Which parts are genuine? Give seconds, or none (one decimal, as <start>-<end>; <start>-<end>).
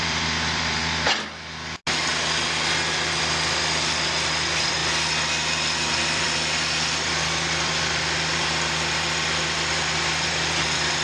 0.8-3.2; 4.8-5.9